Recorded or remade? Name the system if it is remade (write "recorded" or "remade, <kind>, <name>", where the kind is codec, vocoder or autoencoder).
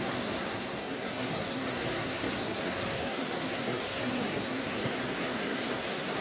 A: remade, codec, SNAC